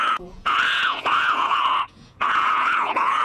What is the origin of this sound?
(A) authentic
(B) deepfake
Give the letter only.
B